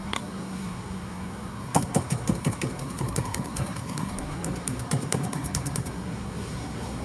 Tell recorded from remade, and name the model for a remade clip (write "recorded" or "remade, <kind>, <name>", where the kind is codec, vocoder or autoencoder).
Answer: remade, codec, SNAC